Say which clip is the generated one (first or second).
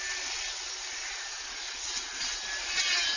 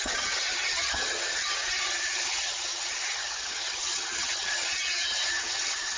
second